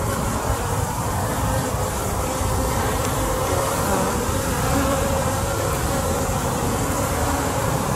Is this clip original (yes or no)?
no